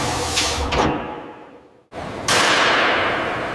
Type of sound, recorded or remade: recorded